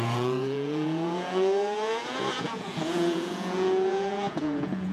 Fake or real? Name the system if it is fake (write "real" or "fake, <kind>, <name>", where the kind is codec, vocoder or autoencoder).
fake, vocoder, Vocos